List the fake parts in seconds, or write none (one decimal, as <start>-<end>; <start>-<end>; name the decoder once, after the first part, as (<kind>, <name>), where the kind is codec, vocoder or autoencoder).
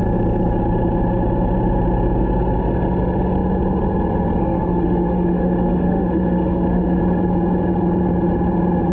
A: 4.4-7.0 (autoencoder, DAC-VAE)